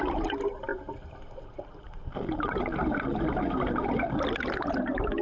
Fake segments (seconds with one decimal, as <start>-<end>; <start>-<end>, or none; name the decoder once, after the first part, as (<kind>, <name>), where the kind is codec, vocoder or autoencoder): none